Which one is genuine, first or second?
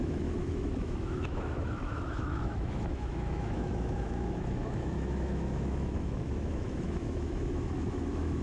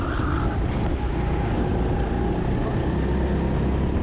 second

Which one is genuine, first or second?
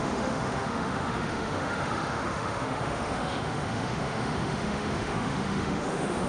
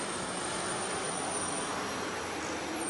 second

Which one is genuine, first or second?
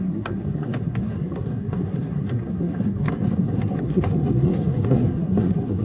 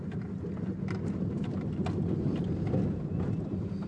second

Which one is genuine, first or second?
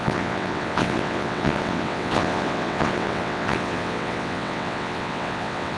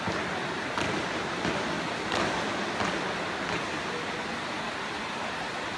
second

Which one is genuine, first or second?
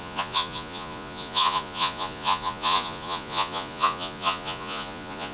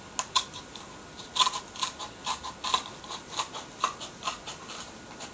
second